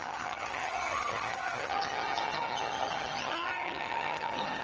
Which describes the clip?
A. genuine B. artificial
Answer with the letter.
B